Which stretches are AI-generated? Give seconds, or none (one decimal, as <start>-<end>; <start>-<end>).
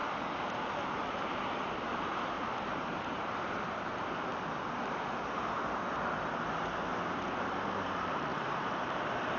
1.1-4.3; 7.6-9.4